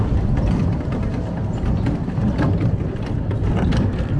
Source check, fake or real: real